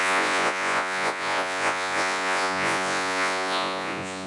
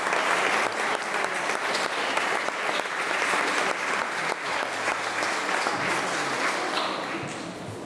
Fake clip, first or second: first